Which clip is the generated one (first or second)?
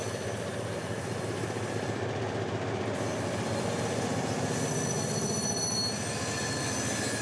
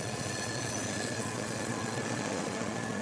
second